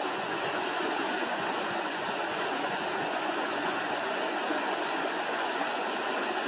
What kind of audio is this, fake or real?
fake